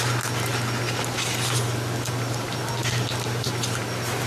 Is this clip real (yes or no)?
yes